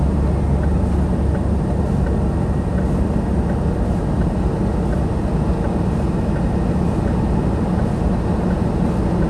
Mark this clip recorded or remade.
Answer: recorded